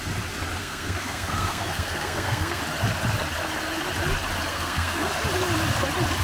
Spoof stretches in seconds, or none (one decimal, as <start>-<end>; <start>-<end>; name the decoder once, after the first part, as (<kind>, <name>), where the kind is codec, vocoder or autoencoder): 0.6-2.6 (codec, SNAC); 4.5-5.1